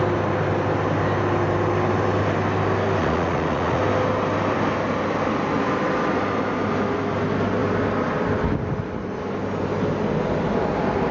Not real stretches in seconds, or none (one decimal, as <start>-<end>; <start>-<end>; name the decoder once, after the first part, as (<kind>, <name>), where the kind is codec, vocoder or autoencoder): 3.0-3.8 (vocoder, Vocos)